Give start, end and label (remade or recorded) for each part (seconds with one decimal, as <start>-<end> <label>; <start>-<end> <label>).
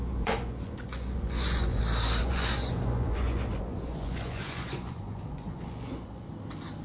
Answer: 0.0-1.8 remade; 1.8-2.2 recorded; 2.2-6.3 remade; 6.3-6.8 recorded